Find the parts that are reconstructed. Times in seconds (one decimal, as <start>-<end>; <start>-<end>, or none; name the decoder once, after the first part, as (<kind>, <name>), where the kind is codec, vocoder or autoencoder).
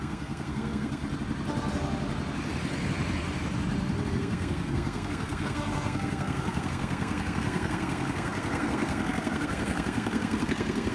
0.0-1.0 (codec, SNAC); 4.1-10.9